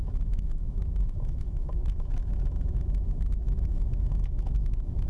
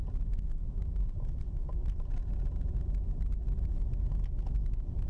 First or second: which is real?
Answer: second